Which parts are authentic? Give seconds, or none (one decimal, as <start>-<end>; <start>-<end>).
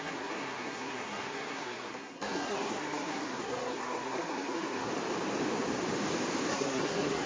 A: 4.9-6.5